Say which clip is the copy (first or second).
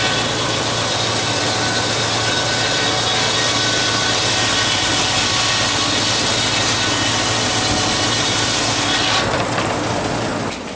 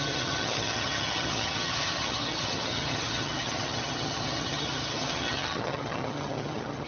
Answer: second